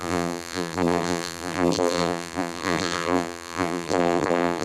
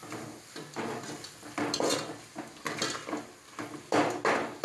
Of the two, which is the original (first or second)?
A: second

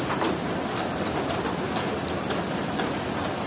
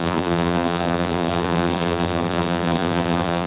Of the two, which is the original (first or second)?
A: first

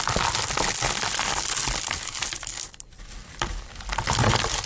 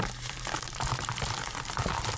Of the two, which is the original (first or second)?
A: first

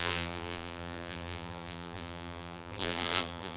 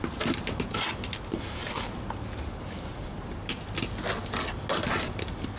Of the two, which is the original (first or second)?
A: second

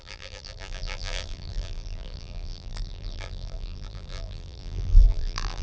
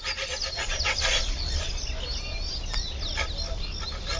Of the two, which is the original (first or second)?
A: second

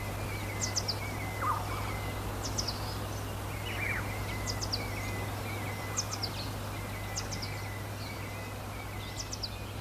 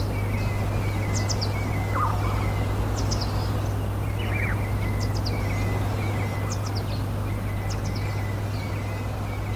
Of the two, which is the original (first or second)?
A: first